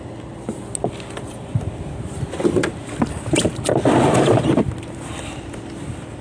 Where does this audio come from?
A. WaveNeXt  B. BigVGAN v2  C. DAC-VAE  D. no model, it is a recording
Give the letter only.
D